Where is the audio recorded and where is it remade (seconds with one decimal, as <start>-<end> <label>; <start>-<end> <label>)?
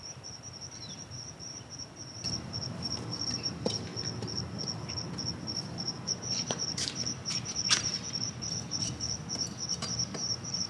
0.0-3.9 remade; 3.9-5.4 recorded; 5.4-10.7 remade